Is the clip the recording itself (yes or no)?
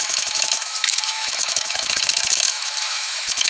no